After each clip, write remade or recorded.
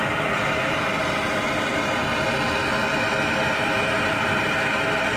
recorded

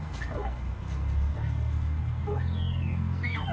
remade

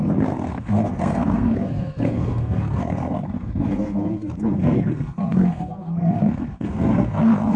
remade